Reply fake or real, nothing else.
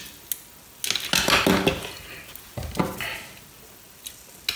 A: real